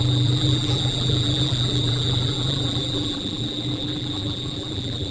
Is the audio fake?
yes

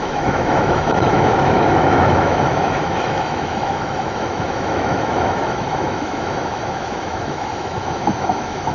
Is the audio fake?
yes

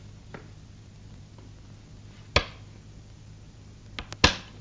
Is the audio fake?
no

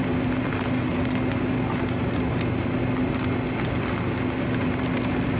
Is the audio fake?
no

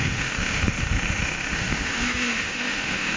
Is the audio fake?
yes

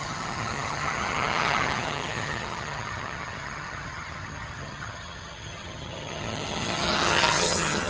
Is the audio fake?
yes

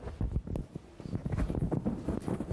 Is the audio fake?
no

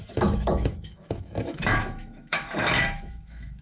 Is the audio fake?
yes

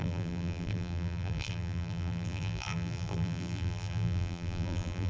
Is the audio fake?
yes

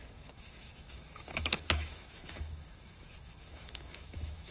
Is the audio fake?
yes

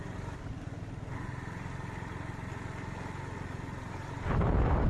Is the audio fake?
no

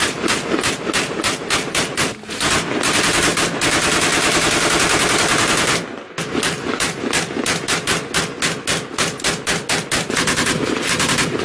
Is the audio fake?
no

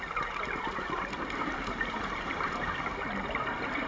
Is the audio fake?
no